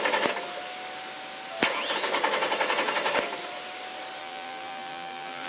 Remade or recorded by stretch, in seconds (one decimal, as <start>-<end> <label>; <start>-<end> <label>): 0.0-4.2 recorded; 4.2-5.5 remade